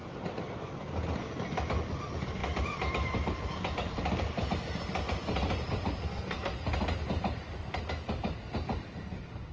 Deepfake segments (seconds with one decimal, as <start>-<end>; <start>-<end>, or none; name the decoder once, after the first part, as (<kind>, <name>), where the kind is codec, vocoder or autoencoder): 6.0-6.5 (codec, SNAC)